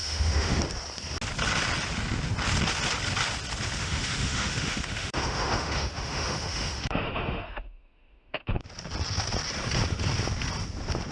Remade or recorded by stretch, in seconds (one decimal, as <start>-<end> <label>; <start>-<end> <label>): 0.0-0.6 remade; 0.6-3.8 recorded; 3.8-8.7 remade; 8.7-11.1 recorded